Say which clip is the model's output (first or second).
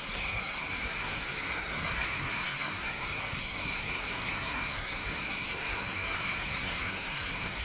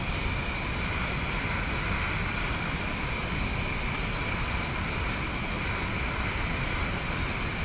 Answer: first